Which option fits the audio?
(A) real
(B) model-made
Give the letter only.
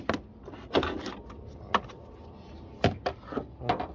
A